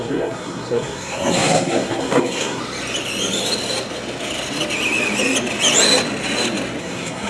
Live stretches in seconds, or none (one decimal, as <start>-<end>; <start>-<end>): 2.6-6.8

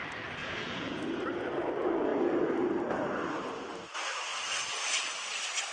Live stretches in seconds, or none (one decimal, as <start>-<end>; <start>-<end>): 0.0-0.4; 1.0-5.7

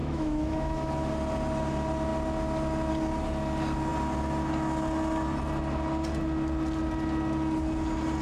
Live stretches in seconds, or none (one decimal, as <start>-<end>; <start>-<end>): 1.1-8.2

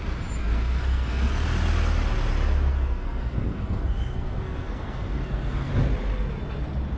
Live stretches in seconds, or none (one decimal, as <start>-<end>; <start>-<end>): 0.0-0.4; 1.3-2.7; 5.7-7.0

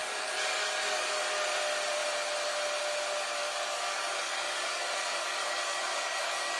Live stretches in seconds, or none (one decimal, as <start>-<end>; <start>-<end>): 1.2-3.4